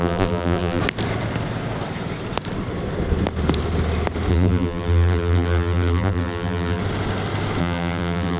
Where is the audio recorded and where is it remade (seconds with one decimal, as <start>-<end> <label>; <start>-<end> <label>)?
0.0-0.8 remade; 0.8-4.3 recorded; 4.3-6.8 remade; 6.8-7.6 recorded; 7.6-8.4 remade